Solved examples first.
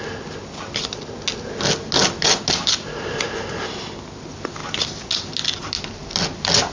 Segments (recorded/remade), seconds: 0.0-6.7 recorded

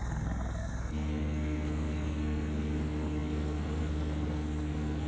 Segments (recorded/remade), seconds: 0.0-5.1 remade

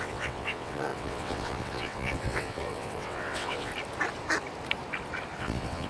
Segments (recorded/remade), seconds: 0.0-3.7 remade; 3.7-5.4 recorded; 5.4-5.9 remade

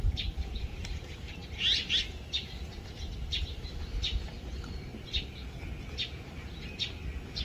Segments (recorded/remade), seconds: 0.0-1.4 remade; 1.4-2.9 recorded; 2.9-4.9 remade; 4.9-7.4 recorded

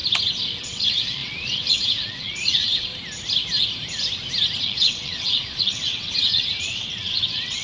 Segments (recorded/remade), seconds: 0.0-0.6 recorded; 0.6-2.9 remade; 2.9-4.6 recorded; 4.6-7.6 remade